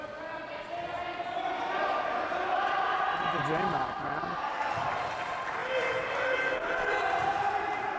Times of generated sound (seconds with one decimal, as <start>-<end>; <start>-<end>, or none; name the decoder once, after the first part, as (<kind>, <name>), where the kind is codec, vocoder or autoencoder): none